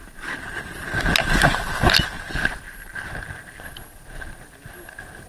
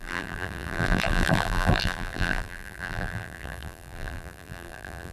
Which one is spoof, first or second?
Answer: second